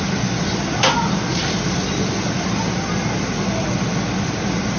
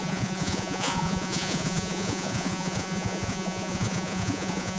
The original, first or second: first